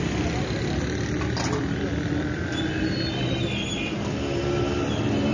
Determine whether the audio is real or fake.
real